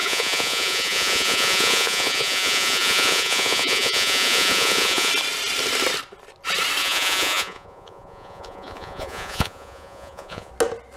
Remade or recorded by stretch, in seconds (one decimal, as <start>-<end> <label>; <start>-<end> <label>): 0.0-5.1 remade; 5.1-6.8 recorded; 6.8-10.5 remade; 10.5-11.0 recorded